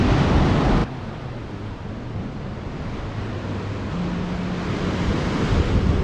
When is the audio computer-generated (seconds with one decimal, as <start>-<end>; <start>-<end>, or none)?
none